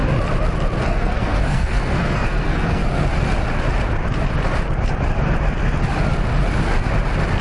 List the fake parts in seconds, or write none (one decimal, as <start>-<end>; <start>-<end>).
0.8-2.8